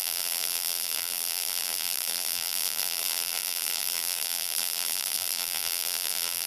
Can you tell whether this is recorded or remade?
remade